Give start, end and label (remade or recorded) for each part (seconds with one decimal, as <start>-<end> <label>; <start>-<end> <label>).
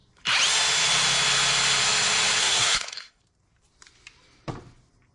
0.0-2.4 recorded; 2.4-3.2 remade; 3.2-5.1 recorded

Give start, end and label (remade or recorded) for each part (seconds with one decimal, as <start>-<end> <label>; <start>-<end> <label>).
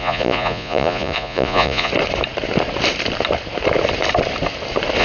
0.0-1.9 remade; 1.9-5.0 recorded